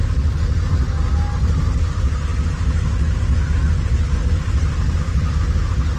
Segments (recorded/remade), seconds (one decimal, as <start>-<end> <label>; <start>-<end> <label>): 0.0-6.0 recorded